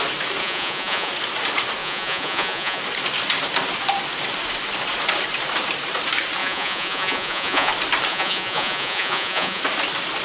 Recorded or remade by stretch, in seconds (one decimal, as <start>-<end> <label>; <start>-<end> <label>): 0.0-0.4 recorded; 0.4-1.1 remade; 1.1-1.8 recorded; 1.8-2.8 remade; 2.8-6.4 recorded; 6.4-7.7 remade; 7.7-8.1 recorded; 8.1-9.6 remade; 9.6-10.2 recorded